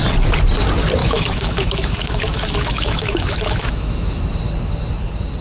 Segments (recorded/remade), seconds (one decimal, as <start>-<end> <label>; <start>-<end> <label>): 0.0-1.0 recorded; 1.0-4.2 remade; 4.2-5.4 recorded